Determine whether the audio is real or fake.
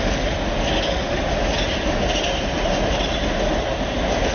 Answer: real